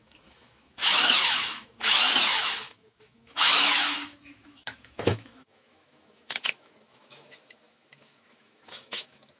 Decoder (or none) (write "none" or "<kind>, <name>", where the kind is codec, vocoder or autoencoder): autoencoder, DAC-VAE